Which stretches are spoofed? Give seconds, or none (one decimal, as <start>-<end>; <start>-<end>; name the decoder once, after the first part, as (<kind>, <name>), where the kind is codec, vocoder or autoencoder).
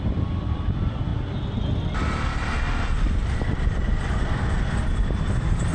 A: none